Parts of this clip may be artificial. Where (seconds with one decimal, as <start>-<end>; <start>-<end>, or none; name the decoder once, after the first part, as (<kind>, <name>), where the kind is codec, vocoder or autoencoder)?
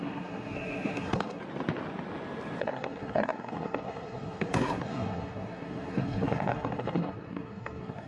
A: 0.0-1.4 (codec, SNAC); 2.6-8.1